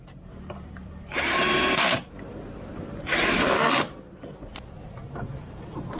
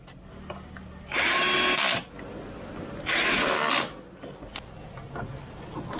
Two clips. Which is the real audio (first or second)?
second